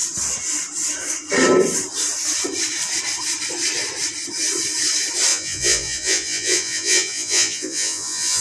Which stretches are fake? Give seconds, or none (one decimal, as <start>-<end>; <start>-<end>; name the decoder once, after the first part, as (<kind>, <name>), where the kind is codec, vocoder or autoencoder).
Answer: 5.3-8.4 (vocoder, Vocos)